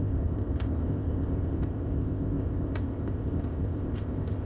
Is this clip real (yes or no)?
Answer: no